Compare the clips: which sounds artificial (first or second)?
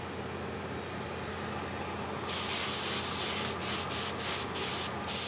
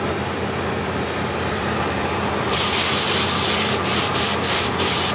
second